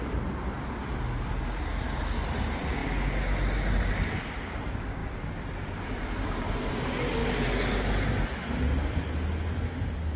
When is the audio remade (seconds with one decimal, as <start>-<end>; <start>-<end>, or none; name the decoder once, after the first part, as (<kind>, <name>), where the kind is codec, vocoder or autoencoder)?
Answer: none